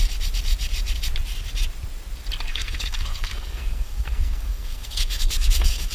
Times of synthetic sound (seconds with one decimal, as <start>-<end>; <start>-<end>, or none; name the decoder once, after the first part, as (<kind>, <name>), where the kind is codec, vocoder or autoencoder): 2.5-5.9 (codec, SNAC)